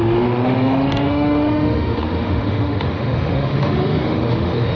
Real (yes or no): no